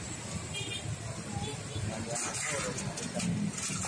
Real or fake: real